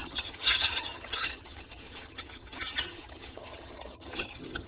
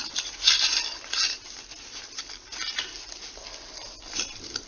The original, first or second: second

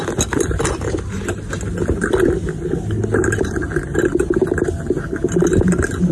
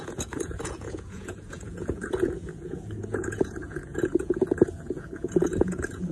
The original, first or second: first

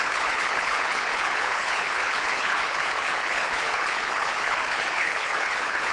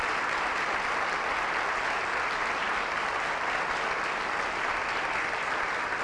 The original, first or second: second